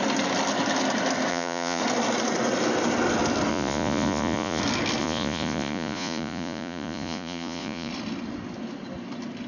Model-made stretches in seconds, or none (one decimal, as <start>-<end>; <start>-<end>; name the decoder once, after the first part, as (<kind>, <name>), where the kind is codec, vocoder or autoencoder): 1.3-1.8 (vocoder, Vocos); 3.5-4.6; 5.0-7.9